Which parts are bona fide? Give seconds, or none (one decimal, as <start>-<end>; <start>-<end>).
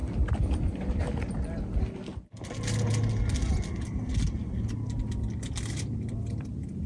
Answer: 0.0-6.9